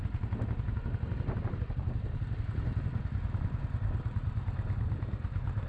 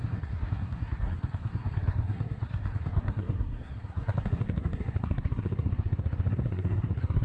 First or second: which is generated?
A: second